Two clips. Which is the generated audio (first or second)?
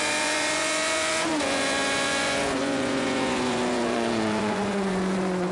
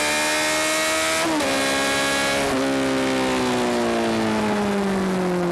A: first